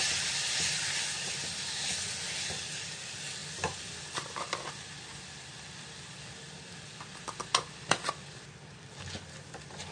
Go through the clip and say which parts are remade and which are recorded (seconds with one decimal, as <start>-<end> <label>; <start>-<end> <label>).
0.0-3.4 recorded; 3.4-4.7 remade; 4.7-9.9 recorded